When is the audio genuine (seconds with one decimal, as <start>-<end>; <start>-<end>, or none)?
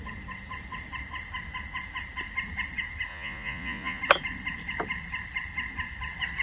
0.0-3.1; 4.0-6.4